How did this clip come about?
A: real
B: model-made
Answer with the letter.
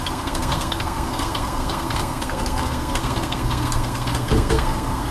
B